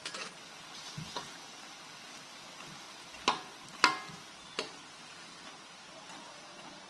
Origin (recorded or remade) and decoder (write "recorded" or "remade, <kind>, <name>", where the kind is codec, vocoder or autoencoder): recorded